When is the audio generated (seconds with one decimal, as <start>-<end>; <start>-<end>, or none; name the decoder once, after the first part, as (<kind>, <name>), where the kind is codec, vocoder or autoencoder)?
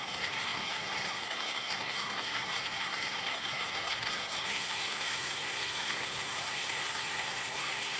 0.0-8.0 (codec, SNAC)